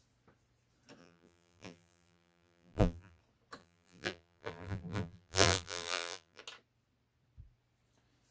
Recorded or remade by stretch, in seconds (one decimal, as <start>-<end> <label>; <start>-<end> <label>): 0.0-1.0 recorded; 1.0-3.2 remade; 3.2-3.6 recorded; 3.6-6.4 remade; 6.4-8.3 recorded

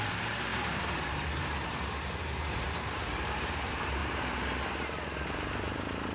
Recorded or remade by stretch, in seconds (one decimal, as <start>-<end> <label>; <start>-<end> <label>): 0.0-4.0 remade; 4.0-6.1 recorded

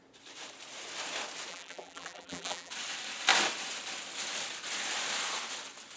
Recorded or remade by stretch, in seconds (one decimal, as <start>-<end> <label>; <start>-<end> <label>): 0.0-1.5 recorded; 1.5-2.7 remade; 2.7-6.0 recorded